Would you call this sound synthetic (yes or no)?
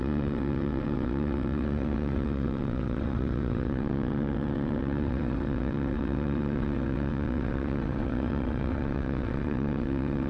yes